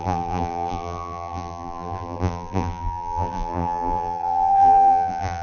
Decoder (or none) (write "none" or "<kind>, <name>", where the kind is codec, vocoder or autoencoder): vocoder, BigVGAN v2